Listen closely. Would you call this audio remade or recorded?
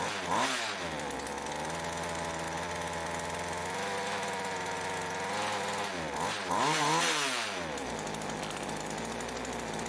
recorded